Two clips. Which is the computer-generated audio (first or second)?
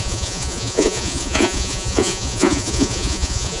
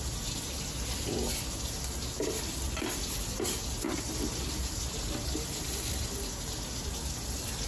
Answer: first